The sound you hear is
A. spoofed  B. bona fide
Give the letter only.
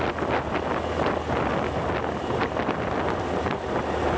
B